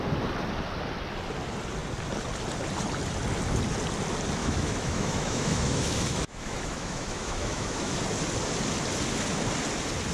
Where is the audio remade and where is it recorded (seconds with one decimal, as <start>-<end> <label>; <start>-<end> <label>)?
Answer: 0.0-4.4 recorded; 4.4-7.9 remade; 7.9-10.1 recorded